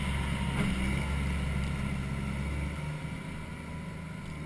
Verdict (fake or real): real